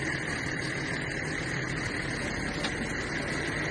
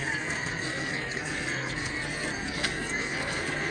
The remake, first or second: second